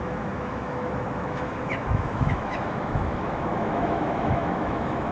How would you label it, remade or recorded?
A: remade